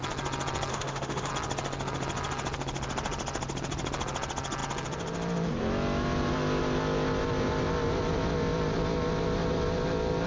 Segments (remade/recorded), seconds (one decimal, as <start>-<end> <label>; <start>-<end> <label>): 0.0-0.7 recorded; 0.7-1.3 remade; 1.3-10.3 recorded